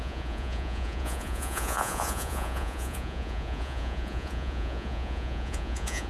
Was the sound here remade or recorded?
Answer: remade